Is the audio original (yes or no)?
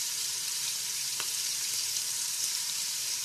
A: no